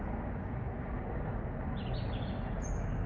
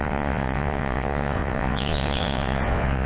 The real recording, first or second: first